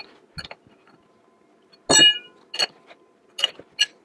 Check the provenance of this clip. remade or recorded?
recorded